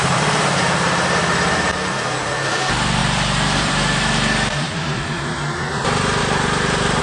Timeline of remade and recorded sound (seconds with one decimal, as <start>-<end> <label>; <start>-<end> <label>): 0.0-1.7 remade; 1.7-3.0 recorded; 3.0-4.7 remade; 4.7-6.2 recorded; 6.2-7.0 remade